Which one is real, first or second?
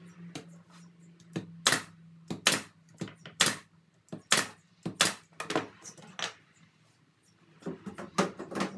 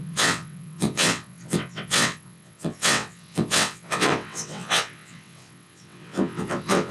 first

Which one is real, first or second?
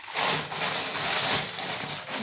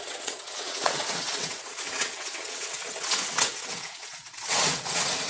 first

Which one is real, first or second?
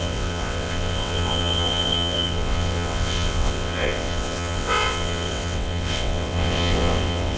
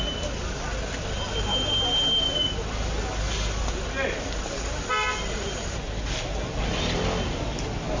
second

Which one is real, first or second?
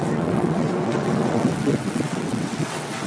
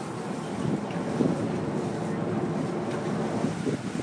second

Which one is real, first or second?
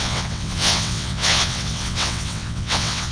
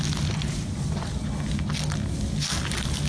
second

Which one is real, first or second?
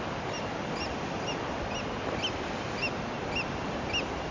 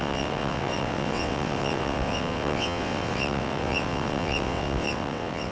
first